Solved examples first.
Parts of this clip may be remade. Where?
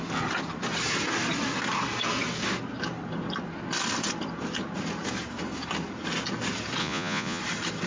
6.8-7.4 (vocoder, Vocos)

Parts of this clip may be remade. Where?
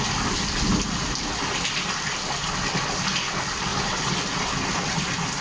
none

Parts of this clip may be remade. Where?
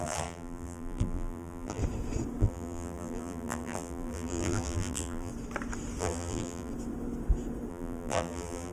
0.0-1.8 (vocoder, BigVGAN v2); 2.4-5.3; 6.0-6.7; 7.7-8.7